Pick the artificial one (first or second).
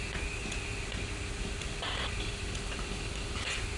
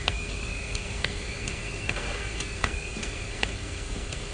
second